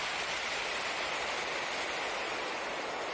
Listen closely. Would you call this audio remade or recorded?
recorded